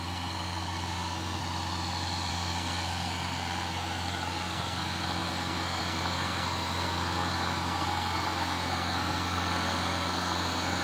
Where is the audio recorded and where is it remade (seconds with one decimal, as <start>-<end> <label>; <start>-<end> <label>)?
0.0-1.4 remade; 1.4-2.3 recorded; 2.3-10.8 remade